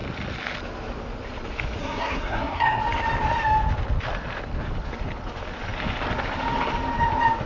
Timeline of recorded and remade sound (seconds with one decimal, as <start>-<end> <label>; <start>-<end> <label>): 0.0-1.8 recorded; 1.8-2.8 remade; 2.8-7.5 recorded